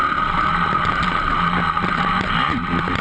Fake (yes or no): no